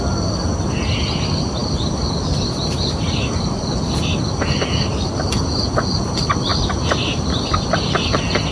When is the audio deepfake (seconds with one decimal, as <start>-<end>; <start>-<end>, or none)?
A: none